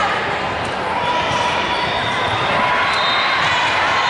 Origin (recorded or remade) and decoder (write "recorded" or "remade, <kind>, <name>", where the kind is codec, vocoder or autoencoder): recorded